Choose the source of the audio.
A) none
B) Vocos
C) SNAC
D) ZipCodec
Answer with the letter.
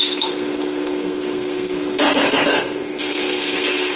C